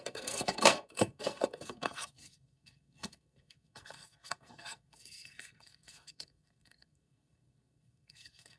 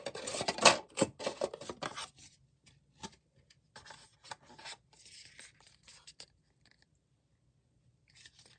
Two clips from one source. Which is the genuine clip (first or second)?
second